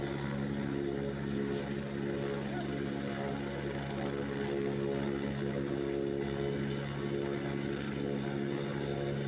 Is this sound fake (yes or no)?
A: no